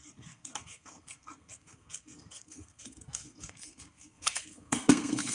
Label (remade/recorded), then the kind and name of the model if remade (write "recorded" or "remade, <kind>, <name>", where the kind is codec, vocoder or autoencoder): remade, codec, SNAC